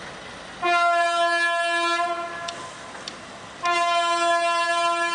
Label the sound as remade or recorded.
recorded